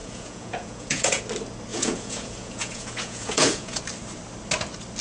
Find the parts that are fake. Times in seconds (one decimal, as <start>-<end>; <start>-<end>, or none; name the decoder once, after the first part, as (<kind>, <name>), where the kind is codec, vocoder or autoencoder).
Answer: 0.0-1.2 (vocoder, Vocos); 1.7-3.8